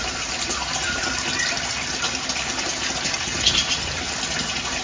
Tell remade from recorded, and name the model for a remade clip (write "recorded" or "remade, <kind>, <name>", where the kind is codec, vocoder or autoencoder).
recorded